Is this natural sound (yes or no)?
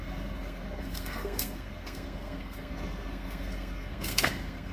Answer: no